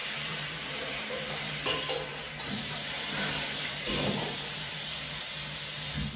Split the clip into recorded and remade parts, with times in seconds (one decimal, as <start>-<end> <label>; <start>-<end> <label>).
0.0-1.5 remade; 1.5-2.1 recorded; 2.1-5.3 remade; 5.3-6.2 recorded